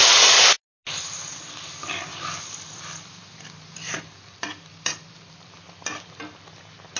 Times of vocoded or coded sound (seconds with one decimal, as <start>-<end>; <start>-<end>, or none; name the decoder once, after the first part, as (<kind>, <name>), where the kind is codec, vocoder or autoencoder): 2.1-5.7 (vocoder, BigVGAN v2)